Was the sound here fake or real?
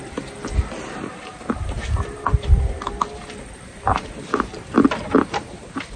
real